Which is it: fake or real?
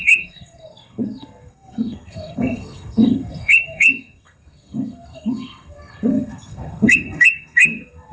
fake